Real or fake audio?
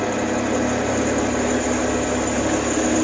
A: real